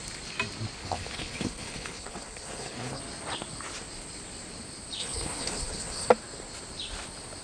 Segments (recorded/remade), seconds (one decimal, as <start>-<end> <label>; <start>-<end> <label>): 0.0-0.8 recorded; 0.8-3.0 remade; 3.0-5.0 recorded; 5.0-6.1 remade; 6.1-7.4 recorded